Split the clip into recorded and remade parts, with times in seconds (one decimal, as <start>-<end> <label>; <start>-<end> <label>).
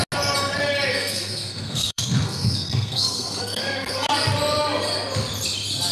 0.0-0.9 recorded; 0.9-4.1 remade; 4.1-5.9 recorded